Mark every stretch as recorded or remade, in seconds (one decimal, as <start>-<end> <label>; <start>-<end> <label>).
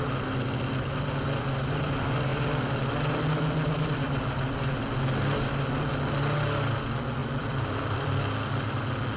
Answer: 0.0-7.2 recorded; 7.2-8.2 remade; 8.2-9.2 recorded